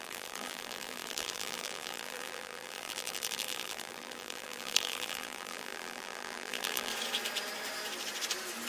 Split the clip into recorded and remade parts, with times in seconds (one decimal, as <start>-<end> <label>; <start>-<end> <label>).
0.0-6.9 remade; 6.9-8.7 recorded